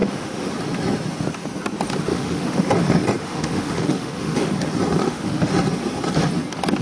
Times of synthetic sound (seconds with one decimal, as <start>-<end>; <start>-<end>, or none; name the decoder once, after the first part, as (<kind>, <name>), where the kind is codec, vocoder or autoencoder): 0.0-0.5 (autoencoder, DAC-VAE); 2.1-2.7; 3.2-4.5; 5.0-5.5